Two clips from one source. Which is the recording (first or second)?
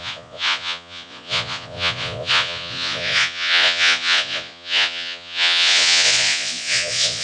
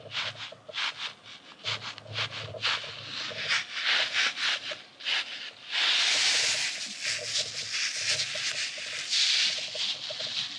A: second